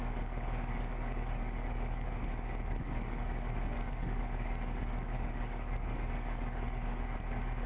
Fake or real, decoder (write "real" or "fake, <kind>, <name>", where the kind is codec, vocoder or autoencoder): fake, codec, DAC